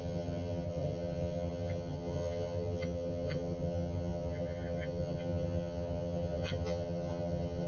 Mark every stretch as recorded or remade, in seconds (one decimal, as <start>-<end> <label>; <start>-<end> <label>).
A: 0.0-7.7 remade